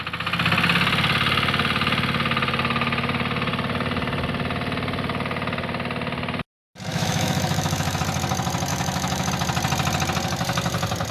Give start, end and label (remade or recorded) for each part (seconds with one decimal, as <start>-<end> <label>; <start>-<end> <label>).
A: 0.0-6.9 recorded; 6.9-8.0 remade; 8.0-8.7 recorded; 8.7-9.3 remade; 9.3-11.1 recorded